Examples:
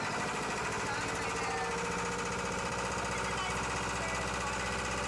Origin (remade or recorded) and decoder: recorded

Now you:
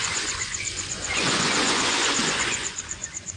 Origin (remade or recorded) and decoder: remade, vocoder, Vocos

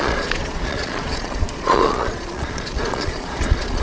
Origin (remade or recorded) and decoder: remade, vocoder, Vocos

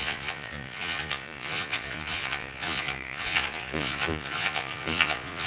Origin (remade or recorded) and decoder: remade, vocoder, Vocos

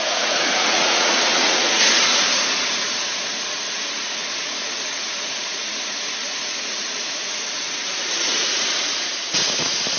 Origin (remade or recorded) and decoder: remade, vocoder, Vocos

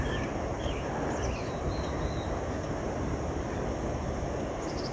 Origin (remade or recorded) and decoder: recorded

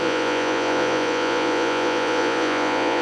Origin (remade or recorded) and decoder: remade, vocoder, Vocos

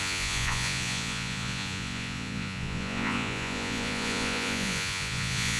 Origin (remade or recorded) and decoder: remade, vocoder, Vocos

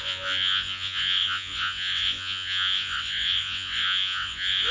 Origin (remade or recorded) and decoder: remade, vocoder, Vocos